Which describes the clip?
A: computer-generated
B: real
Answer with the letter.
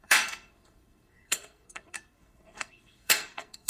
A